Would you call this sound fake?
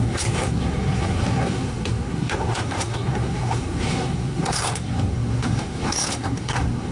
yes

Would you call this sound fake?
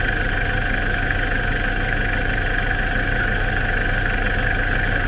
no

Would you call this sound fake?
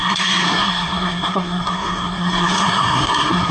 yes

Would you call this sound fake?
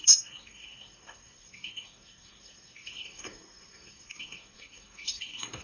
yes